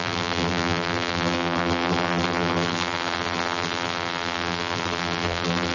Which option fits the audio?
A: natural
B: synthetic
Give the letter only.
B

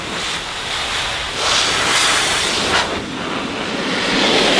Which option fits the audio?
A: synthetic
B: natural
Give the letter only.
B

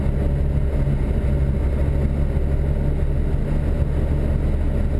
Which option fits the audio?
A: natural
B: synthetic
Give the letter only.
A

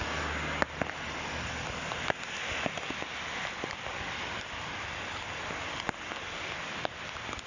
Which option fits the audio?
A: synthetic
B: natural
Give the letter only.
B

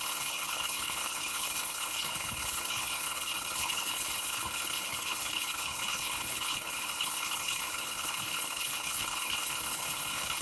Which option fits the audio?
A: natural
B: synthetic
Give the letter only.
B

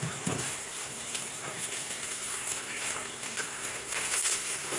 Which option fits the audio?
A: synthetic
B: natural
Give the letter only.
A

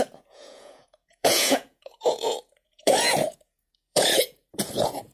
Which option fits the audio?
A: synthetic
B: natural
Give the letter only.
A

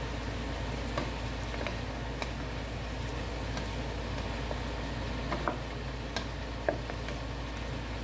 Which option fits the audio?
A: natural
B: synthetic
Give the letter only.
A